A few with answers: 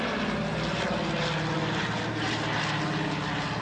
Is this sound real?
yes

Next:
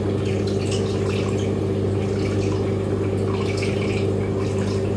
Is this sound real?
yes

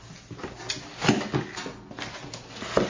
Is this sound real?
yes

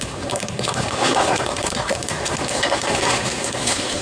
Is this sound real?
no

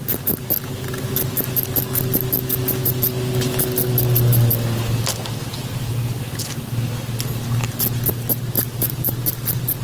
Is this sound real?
yes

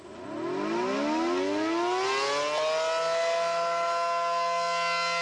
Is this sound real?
yes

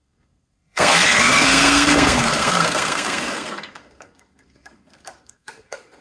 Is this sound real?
no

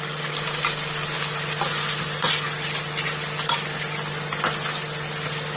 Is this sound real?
yes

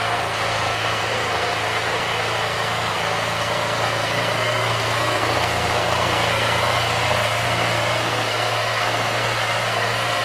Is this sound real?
no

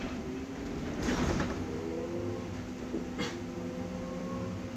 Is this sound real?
yes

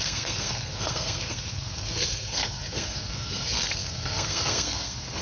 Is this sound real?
no